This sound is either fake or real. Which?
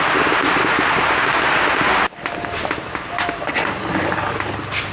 real